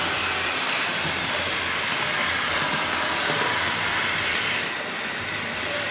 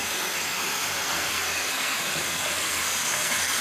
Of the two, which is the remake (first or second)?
second